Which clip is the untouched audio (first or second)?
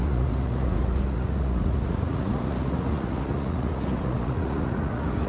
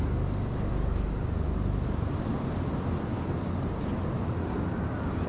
second